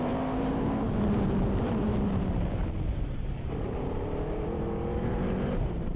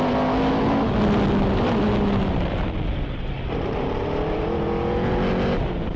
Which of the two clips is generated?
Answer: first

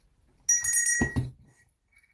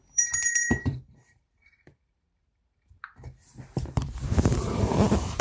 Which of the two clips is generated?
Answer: second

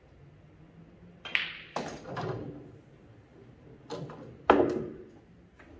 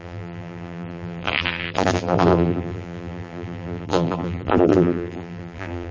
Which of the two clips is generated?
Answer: second